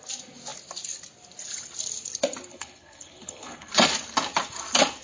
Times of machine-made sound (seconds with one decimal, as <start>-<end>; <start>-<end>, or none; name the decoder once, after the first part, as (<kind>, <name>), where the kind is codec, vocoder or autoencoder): 2.5-3.7 (codec, HILCodec)